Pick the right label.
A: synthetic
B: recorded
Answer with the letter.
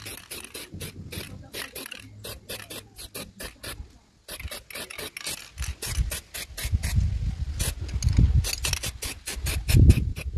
B